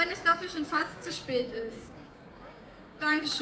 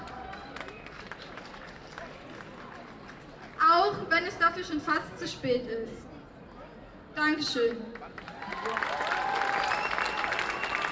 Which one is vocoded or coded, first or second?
first